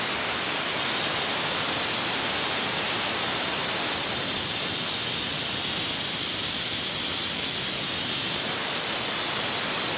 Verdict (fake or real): real